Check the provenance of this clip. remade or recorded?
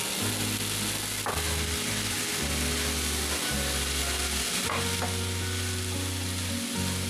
recorded